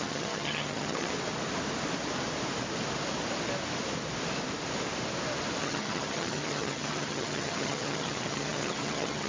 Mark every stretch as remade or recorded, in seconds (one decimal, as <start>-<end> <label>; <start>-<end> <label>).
0.0-1.1 remade; 1.1-5.6 recorded; 5.6-9.3 remade